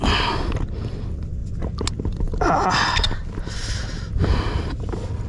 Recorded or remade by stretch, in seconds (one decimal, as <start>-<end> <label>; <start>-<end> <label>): 0.0-3.2 recorded; 3.2-4.0 remade; 4.0-5.3 recorded